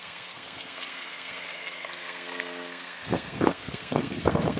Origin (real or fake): fake